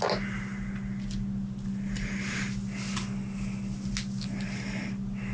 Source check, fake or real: real